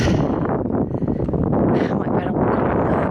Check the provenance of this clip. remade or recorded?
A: recorded